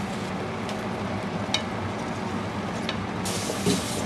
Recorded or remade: recorded